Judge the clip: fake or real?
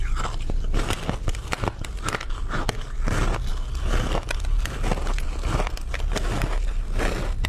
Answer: real